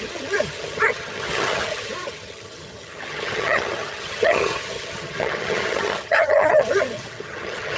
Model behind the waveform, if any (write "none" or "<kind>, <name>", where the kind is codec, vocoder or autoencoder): vocoder, HiFi-GAN